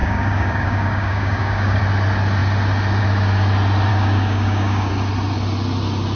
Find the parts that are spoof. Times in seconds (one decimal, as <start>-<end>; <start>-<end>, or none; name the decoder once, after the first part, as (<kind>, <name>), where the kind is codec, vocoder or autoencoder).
0.0-1.8 (codec, DAC); 3.9-4.9